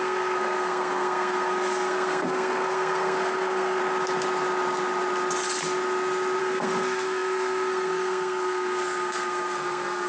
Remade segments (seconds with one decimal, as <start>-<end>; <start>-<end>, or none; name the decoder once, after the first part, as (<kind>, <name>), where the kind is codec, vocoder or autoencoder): 0.0-3.8 (codec, SNAC); 6.4-10.1